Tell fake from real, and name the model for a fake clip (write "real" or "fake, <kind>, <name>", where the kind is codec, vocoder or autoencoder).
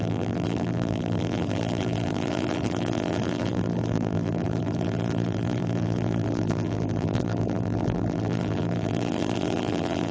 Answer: fake, vocoder, BigVGAN v2